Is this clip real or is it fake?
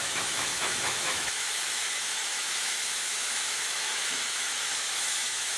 fake